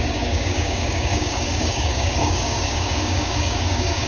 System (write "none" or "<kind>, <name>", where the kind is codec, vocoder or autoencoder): codec, DAC